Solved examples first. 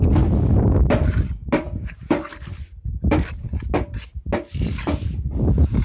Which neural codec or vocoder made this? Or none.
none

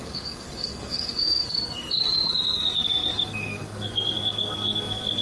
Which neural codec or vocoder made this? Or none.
codec, SNAC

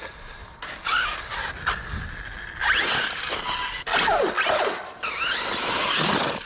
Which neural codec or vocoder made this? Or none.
none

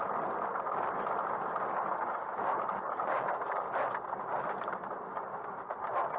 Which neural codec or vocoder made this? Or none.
none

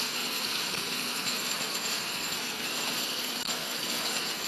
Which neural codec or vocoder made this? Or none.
codec, SNAC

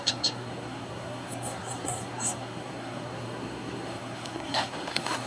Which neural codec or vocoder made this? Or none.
codec, SNAC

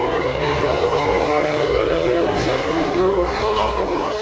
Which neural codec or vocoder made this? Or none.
codec, SNAC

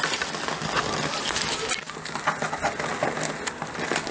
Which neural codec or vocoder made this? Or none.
none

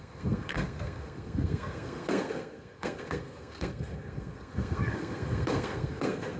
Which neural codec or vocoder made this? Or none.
codec, SNAC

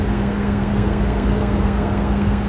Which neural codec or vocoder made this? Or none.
codec, SNAC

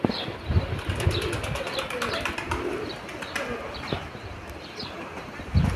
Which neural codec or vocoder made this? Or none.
none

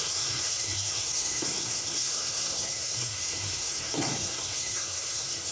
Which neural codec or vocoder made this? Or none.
codec, SNAC